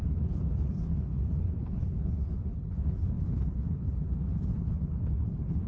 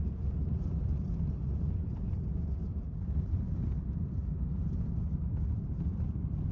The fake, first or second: first